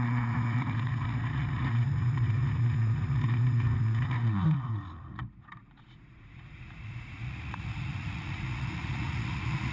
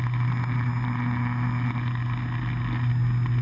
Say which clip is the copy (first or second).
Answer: first